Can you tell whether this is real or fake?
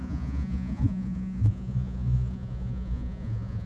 fake